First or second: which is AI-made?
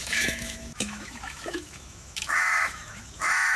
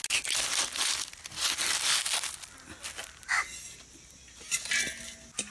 first